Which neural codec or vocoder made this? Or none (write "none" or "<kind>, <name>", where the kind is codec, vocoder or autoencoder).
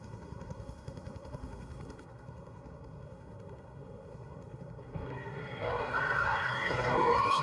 codec, SNAC